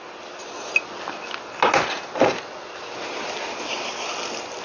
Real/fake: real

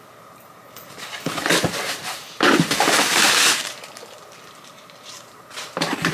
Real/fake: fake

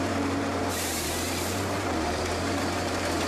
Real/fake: fake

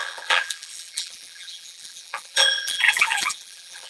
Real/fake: fake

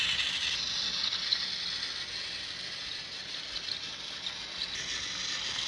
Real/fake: real